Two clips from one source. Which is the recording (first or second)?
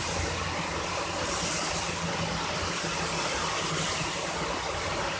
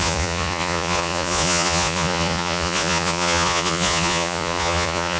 first